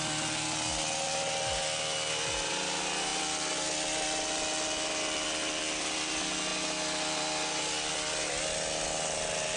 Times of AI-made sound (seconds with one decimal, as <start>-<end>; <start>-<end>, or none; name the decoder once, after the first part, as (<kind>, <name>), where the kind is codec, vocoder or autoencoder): none